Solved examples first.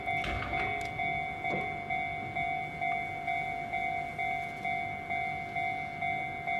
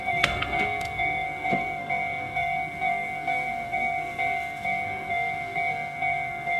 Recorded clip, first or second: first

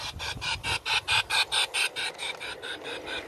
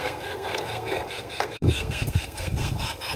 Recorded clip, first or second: first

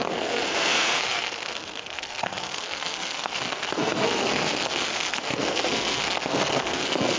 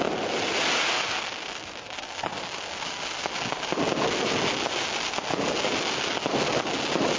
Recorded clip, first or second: second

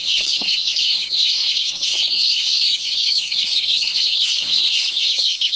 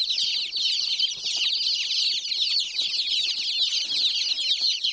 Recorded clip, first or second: second